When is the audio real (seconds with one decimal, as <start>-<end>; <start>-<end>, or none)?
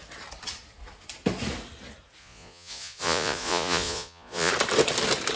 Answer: 0.0-2.2; 4.5-5.4